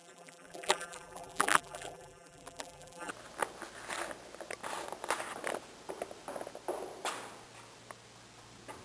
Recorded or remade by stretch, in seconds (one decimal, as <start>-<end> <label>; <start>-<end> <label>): 0.0-3.1 remade; 3.1-8.8 recorded